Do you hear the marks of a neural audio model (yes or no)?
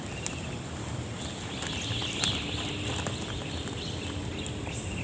no